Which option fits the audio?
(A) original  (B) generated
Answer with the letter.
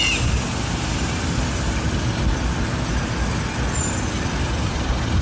A